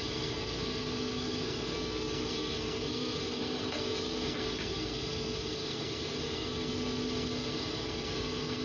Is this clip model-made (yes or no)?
yes